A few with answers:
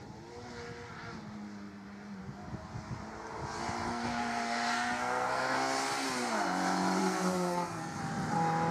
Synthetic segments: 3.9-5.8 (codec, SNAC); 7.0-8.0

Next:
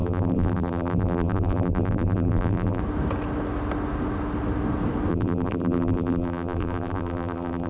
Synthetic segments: 0.0-2.8 (vocoder, BigVGAN v2); 5.1-7.7

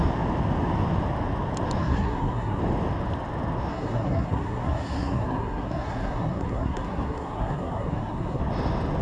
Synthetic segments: 1.8-2.6 (codec, SNAC); 3.7-8.4

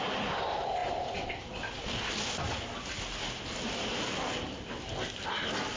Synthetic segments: none